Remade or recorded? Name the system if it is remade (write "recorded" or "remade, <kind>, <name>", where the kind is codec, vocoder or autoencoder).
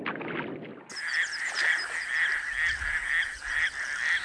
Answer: recorded